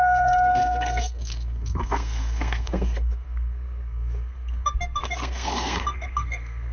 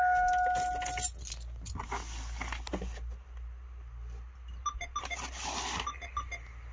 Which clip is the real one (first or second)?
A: second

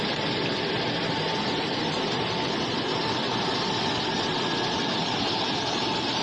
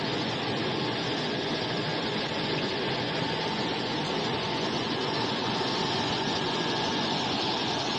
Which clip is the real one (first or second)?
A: first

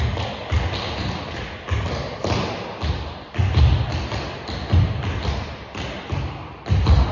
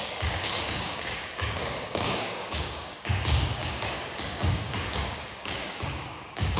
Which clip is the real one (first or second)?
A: first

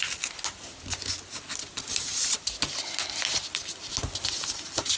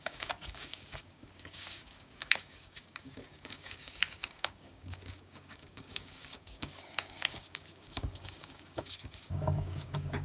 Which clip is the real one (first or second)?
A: first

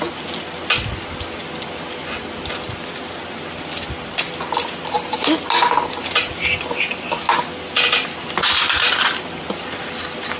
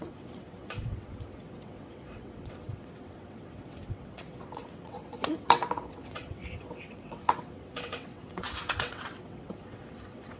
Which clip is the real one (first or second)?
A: first